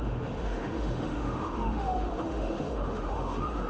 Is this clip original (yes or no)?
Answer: no